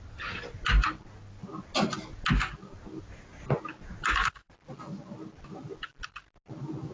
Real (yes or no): yes